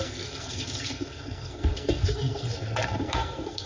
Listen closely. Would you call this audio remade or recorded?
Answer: remade